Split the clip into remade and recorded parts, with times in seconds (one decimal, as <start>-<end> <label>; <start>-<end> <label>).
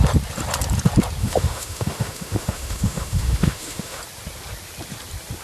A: 0.0-1.2 recorded; 1.2-4.0 remade; 4.0-5.4 recorded